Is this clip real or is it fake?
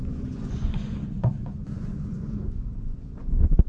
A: fake